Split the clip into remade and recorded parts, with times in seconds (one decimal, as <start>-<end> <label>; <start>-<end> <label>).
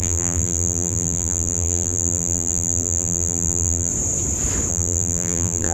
0.0-3.9 remade; 3.9-4.7 recorded; 4.7-5.7 remade